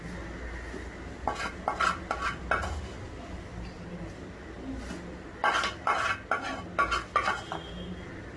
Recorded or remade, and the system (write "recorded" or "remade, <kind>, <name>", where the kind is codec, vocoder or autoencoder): recorded